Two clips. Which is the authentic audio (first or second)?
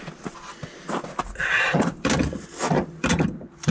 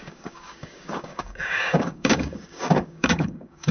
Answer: first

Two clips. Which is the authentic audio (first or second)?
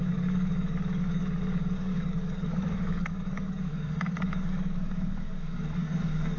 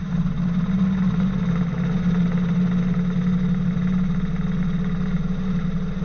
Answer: second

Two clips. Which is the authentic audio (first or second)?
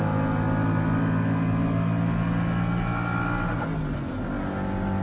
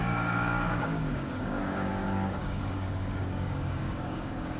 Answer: first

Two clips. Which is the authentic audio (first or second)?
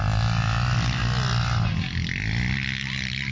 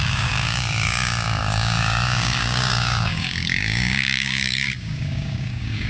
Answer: first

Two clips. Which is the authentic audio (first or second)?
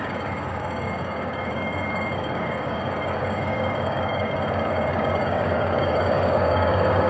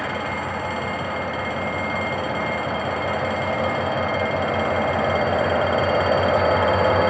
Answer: second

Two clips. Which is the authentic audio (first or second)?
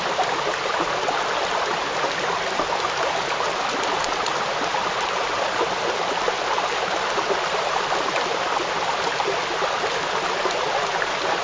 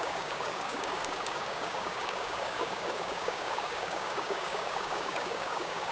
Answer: first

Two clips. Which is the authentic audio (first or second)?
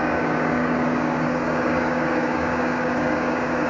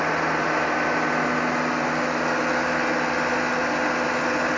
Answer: second